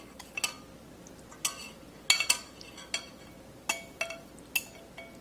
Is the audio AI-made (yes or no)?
no